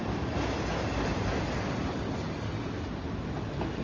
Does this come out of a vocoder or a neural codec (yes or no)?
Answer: no